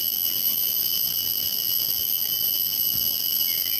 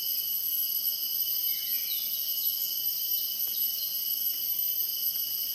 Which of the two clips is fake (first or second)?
first